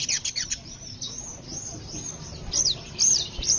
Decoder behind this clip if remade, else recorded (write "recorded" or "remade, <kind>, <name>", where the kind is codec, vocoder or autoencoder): remade, vocoder, BigVGAN v2